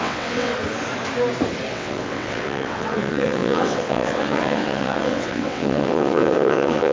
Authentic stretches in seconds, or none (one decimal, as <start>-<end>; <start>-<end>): 0.5-1.7